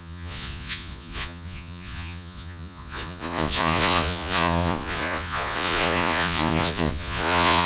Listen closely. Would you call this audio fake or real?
fake